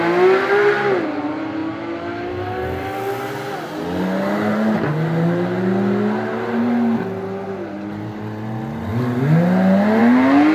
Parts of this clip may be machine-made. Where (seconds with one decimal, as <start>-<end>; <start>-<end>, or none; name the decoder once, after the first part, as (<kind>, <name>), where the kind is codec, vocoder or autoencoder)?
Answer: none